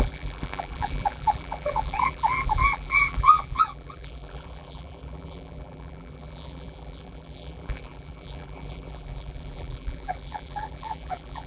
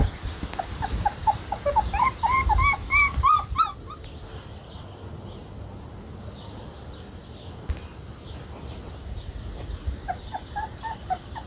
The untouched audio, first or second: second